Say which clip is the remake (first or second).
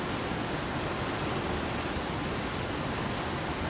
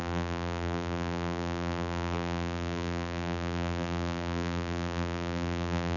second